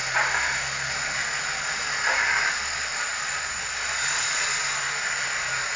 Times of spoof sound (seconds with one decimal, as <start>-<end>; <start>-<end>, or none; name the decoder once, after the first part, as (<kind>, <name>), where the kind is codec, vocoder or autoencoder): 3.5-4.5 (vocoder, BigVGAN v2)

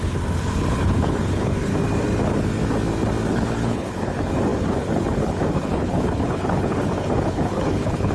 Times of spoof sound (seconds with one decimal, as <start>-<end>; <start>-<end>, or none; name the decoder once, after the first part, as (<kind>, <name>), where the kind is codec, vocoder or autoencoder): 0.0-1.7 (codec, HILCodec); 3.3-8.1

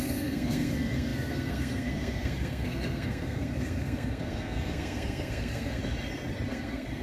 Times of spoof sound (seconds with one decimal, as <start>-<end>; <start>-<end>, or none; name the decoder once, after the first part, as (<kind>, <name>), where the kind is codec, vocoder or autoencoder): 0.0-5.8 (codec, SNAC); 6.5-7.0

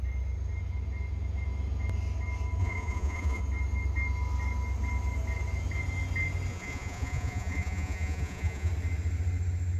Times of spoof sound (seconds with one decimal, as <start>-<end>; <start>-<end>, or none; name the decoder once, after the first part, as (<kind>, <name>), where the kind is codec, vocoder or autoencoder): 2.6-3.4 (vocoder, Vocos); 6.5-8.7

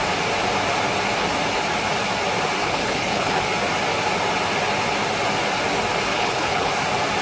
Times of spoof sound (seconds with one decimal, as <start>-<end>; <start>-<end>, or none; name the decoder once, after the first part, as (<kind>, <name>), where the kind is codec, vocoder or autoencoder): 2.6-3.4 (codec, HILCodec); 6.1-6.7

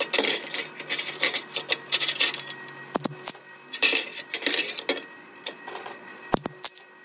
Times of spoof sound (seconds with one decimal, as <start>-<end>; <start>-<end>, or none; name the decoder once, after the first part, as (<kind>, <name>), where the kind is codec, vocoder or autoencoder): 5.2-6.2 (vocoder, Vocos)

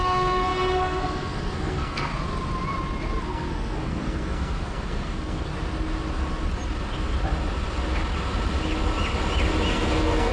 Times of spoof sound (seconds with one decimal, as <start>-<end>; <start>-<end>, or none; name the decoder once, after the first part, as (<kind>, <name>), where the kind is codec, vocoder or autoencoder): 0.0-2.1 (codec, SNAC); 3.2-5.5; 9.7-10.3